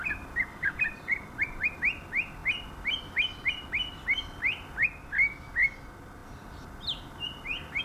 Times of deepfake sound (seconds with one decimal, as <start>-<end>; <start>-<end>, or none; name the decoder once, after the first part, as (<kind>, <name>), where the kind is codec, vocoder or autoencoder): 0.5-1.7 (vocoder, BigVGAN v2)

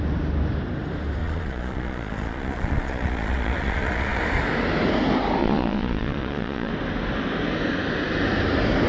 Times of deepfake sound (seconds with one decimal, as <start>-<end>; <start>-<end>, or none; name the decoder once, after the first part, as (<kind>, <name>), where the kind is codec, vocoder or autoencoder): 1.2-4.2 (vocoder, Vocos); 5.4-6.7

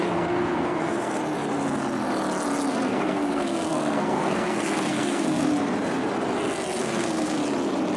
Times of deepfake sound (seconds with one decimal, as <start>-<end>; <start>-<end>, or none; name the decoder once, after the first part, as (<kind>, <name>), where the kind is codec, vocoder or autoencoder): 0.0-1.2 (codec, SNAC); 2.7-5.5; 6.8-7.4

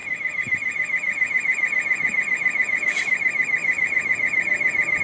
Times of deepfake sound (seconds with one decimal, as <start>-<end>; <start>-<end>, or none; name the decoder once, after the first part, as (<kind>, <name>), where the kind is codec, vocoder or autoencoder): 0.0-3.0 (vocoder, Vocos); 3.6-5.0

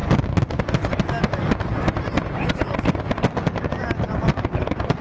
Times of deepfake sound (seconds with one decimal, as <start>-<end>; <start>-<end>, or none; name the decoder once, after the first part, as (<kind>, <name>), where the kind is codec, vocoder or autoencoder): none

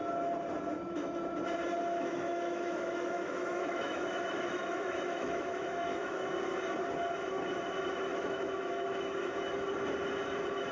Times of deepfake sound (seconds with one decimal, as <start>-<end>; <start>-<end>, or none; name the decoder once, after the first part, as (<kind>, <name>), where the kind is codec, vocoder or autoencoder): 2.0-6.3 (autoencoder, DAC-VAE); 8.1-9.3